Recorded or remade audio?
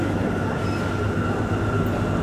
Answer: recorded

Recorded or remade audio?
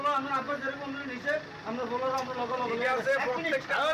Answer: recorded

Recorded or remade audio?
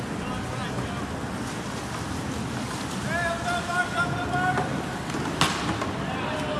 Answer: recorded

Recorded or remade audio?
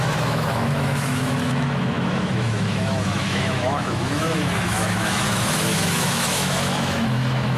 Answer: remade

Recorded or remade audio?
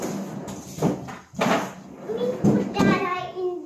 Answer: recorded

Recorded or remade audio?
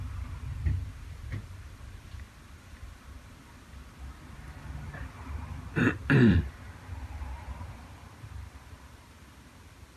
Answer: remade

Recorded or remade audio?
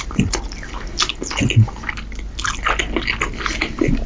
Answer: recorded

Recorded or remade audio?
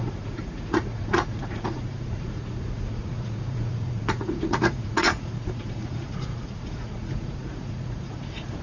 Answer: remade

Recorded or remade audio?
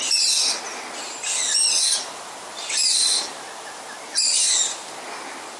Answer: recorded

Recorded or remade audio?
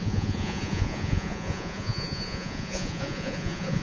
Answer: remade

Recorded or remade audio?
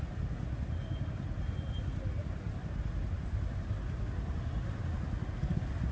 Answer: recorded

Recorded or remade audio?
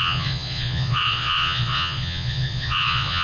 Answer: remade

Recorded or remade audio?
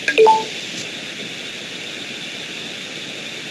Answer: recorded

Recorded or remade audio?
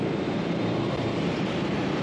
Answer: remade